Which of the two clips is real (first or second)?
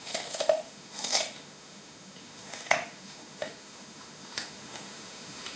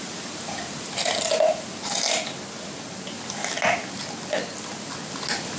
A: second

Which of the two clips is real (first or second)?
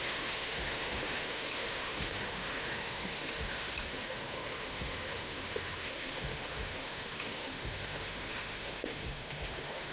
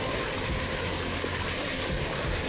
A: second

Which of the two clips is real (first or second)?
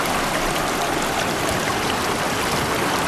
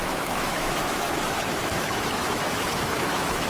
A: first